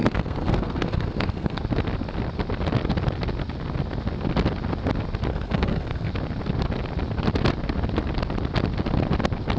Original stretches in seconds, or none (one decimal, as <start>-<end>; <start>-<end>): 1.6-5.3; 6.1-9.6